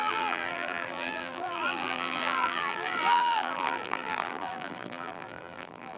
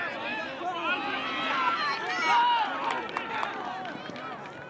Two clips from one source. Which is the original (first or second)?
second